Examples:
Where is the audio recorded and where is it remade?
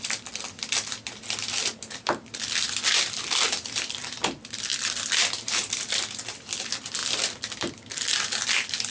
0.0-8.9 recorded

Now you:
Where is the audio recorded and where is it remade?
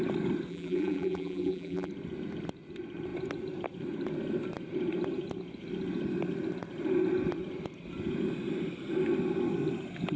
0.0-0.5 recorded; 0.5-1.9 remade; 1.9-10.2 recorded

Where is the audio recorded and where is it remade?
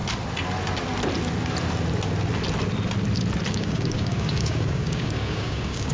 0.0-3.5 recorded; 3.5-5.9 remade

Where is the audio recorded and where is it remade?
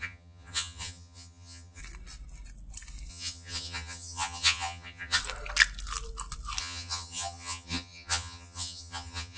0.0-1.8 remade; 1.8-3.1 recorded; 3.1-5.2 remade; 5.2-6.6 recorded; 6.6-9.4 remade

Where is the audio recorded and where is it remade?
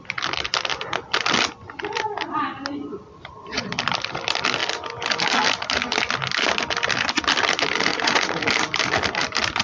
0.0-7.9 recorded; 7.9-8.4 remade; 8.4-9.6 recorded